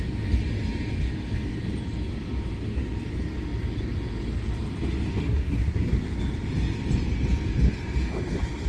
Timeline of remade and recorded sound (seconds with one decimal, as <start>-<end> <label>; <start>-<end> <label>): 0.0-5.2 recorded; 5.2-5.9 remade; 5.9-8.7 recorded